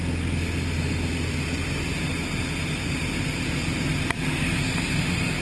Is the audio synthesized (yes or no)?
no